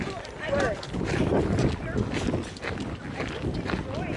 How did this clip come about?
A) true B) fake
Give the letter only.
A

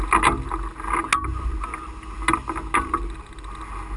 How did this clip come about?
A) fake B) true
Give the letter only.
B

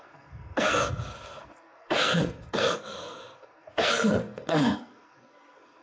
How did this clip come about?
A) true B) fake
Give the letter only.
B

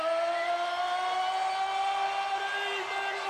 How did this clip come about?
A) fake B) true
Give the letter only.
B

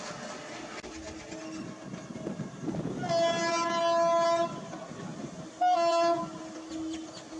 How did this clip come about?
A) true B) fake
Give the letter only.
A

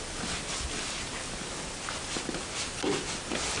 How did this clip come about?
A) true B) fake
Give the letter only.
A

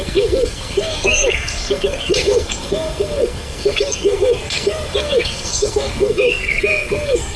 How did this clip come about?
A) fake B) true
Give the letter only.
A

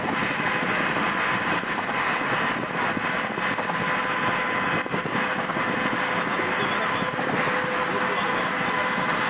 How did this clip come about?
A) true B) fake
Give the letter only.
A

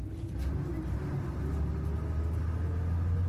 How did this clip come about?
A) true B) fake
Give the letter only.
A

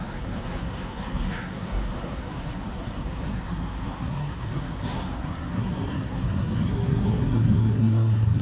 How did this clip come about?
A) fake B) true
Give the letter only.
A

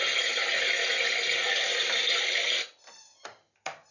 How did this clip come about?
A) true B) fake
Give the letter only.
A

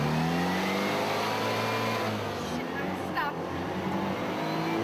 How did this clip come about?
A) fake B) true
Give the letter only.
B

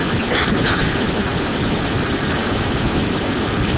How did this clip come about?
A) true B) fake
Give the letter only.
A